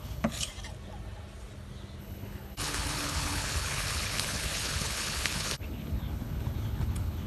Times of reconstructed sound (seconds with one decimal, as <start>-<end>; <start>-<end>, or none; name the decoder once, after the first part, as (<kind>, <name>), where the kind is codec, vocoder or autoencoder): 0.0-0.5 (codec, HILCodec); 2.0-7.3